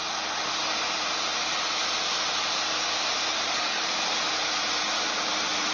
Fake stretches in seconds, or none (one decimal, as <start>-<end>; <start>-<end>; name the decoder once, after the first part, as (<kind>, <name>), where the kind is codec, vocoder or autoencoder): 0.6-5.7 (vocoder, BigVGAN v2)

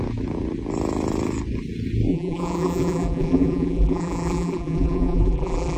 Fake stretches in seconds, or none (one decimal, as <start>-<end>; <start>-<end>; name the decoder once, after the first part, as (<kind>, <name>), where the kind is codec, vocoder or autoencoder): 2.1-5.8 (vocoder, BigVGAN v2)

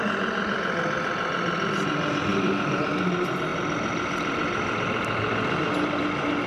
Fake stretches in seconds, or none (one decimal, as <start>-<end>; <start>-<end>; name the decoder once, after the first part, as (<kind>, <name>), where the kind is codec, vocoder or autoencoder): 2.3-2.8 (vocoder, BigVGAN v2); 3.5-6.0

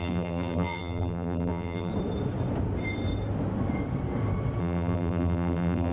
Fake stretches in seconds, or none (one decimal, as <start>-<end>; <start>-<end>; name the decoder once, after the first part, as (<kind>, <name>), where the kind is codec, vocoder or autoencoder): 0.0-1.9 (vocoder, BigVGAN v2); 4.6-5.9